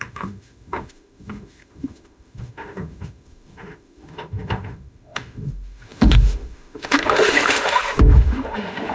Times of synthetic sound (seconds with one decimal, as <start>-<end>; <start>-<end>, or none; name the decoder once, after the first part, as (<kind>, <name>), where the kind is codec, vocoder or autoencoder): 0.0-8.9 (autoencoder, DAC-VAE)